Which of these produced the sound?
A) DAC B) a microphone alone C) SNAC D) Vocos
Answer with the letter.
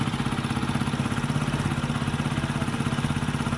B